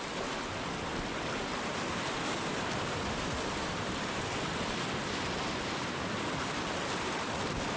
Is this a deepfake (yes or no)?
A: no